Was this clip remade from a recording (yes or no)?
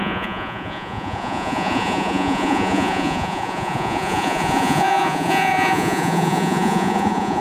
yes